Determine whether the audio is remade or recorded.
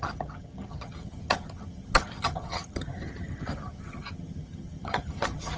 remade